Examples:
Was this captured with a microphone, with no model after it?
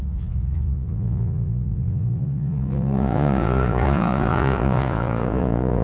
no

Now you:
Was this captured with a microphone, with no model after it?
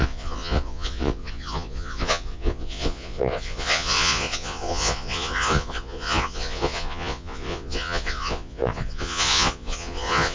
no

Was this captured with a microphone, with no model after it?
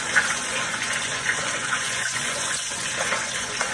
no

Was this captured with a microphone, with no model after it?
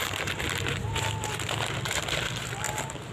yes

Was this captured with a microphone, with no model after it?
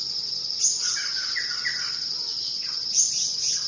yes